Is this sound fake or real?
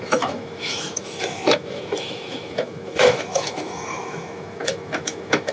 fake